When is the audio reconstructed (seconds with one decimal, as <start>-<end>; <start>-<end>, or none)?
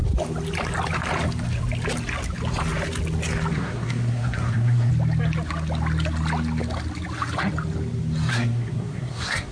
3.5-4.9; 8.3-9.5